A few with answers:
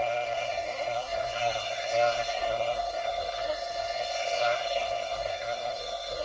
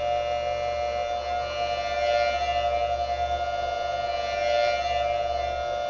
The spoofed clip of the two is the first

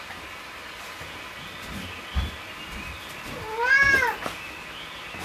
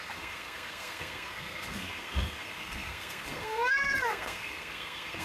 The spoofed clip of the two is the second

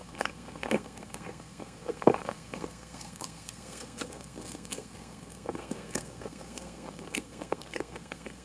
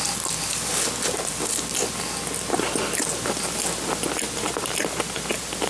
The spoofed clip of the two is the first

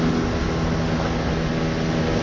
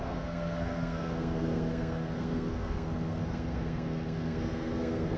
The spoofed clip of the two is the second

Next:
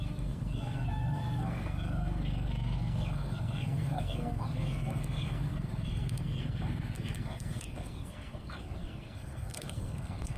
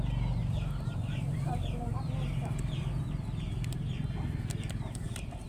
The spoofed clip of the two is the first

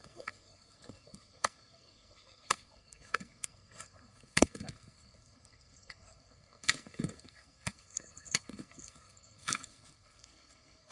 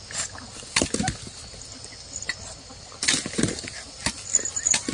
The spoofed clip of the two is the first